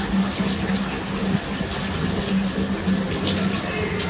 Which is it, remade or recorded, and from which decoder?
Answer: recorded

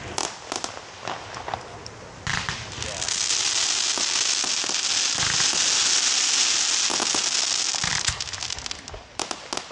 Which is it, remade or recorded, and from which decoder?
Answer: recorded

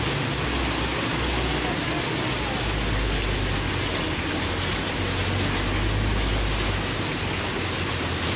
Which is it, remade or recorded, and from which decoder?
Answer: recorded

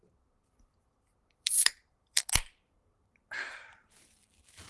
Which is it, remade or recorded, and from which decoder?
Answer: remade, vocoder, BigVGAN v2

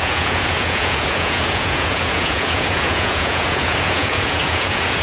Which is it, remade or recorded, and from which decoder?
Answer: remade, vocoder, Vocos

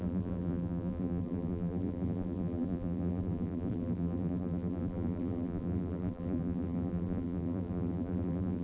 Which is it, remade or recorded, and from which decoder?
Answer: remade, vocoder, BigVGAN v2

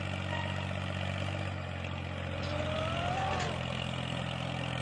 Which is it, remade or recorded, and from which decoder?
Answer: recorded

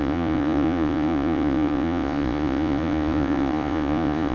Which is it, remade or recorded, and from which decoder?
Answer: remade, vocoder, Vocos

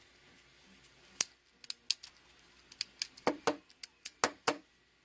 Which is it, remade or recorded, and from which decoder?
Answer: recorded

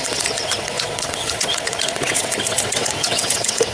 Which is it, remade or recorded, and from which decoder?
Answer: remade, vocoder, WaveNeXt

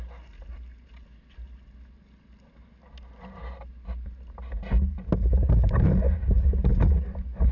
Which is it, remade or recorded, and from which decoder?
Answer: recorded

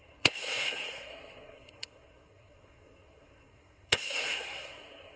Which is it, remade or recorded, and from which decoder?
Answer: remade, codec, SNAC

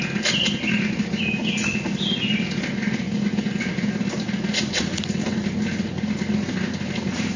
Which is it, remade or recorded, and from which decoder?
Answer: recorded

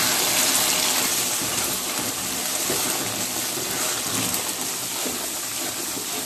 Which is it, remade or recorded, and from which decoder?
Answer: recorded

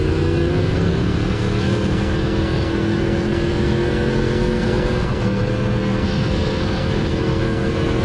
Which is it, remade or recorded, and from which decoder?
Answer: remade, codec, SNAC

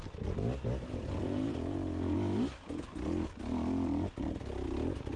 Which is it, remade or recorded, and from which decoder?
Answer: recorded